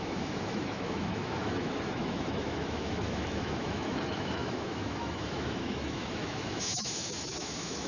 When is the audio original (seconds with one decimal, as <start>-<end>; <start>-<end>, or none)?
none